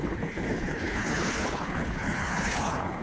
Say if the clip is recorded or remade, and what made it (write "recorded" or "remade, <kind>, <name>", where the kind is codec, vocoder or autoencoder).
remade, codec, HILCodec